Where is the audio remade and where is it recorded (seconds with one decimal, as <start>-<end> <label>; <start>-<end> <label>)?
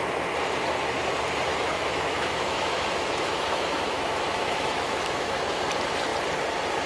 0.0-1.5 recorded; 1.5-5.6 remade; 5.6-6.9 recorded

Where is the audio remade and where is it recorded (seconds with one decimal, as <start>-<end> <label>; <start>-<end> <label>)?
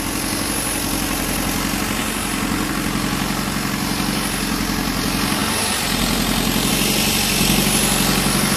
0.0-8.6 recorded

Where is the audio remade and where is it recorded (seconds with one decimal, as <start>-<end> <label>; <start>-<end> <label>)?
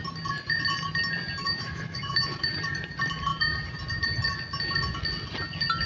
0.0-1.4 recorded; 1.4-2.5 remade; 2.5-5.9 recorded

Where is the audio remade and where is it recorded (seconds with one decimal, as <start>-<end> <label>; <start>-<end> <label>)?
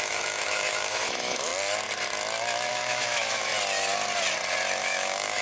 0.0-1.5 remade; 1.5-2.7 recorded; 2.7-3.5 remade; 3.5-4.8 recorded; 4.8-5.4 remade